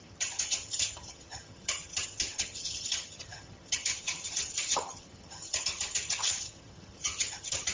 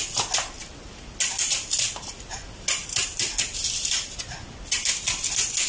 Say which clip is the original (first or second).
second